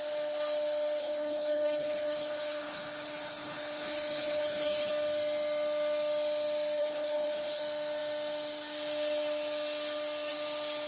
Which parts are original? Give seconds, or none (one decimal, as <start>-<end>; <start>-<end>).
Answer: 0.0-1.0; 4.9-6.8; 7.6-10.9